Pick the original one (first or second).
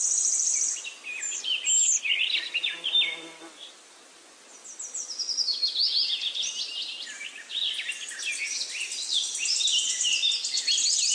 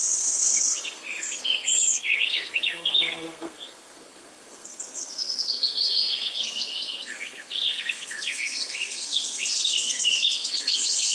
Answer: first